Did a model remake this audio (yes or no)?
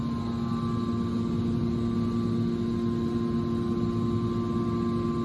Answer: no